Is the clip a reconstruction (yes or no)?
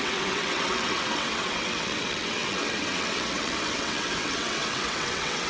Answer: yes